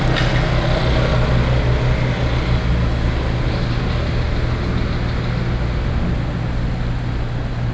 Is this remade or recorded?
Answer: recorded